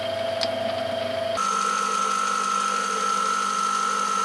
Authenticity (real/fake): real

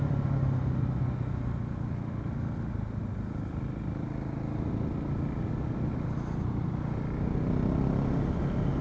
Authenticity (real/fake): real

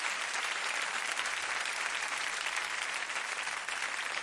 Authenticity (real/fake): fake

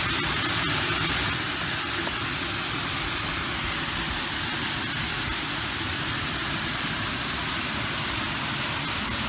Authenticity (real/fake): real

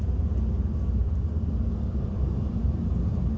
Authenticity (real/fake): real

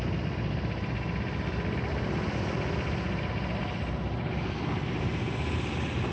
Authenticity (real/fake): real